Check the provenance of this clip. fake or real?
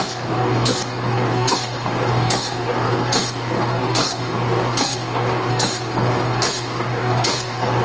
fake